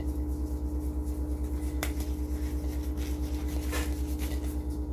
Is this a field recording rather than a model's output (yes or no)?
yes